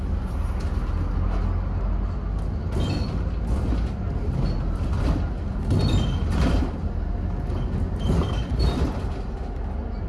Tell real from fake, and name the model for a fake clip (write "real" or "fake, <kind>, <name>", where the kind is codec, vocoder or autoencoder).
real